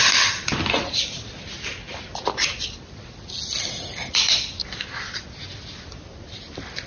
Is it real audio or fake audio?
real